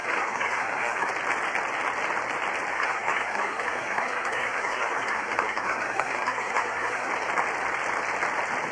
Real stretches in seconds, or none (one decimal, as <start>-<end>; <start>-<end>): 1.1-2.7; 7.1-8.7